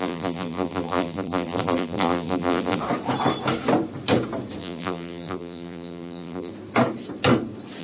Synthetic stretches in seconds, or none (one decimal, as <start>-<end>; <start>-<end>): 0.0-2.8; 4.6-6.5